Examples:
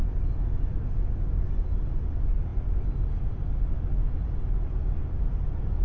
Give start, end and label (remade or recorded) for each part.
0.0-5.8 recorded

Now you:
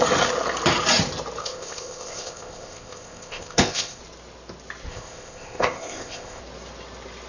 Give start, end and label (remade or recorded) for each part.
0.0-1.4 recorded; 1.4-4.0 remade; 4.0-4.9 recorded; 4.9-6.4 remade; 6.4-7.3 recorded

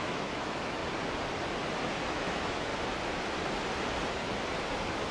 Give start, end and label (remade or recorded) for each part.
0.0-0.8 remade; 0.8-2.1 recorded; 2.1-2.7 remade; 2.7-5.1 recorded

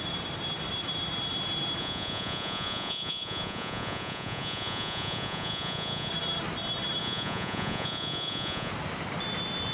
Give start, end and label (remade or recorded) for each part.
0.0-1.8 recorded; 1.8-6.1 remade; 6.1-7.0 recorded; 7.0-8.7 remade; 8.7-9.7 recorded

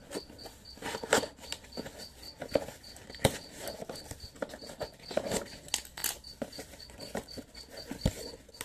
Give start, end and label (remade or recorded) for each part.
0.0-8.6 recorded